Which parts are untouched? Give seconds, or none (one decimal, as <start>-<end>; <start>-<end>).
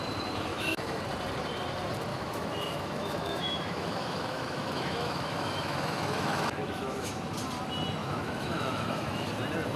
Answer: 0.0-0.5; 1.0-2.1; 7.1-8.0; 9.3-9.8